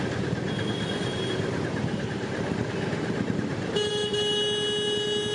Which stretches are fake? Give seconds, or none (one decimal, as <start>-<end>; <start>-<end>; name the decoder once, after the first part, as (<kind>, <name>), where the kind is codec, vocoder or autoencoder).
1.0-3.9 (vocoder, BigVGAN v2)